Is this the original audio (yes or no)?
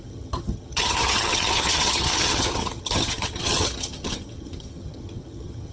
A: no